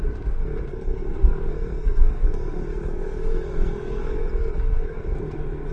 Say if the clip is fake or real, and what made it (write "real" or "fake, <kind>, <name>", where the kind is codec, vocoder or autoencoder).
fake, codec, SNAC